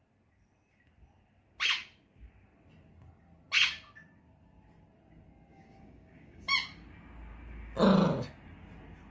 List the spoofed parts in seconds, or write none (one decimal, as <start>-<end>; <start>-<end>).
5.5-6.5